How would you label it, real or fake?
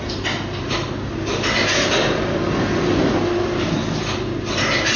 real